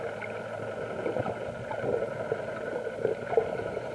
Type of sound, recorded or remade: recorded